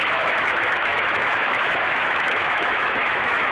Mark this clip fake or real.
fake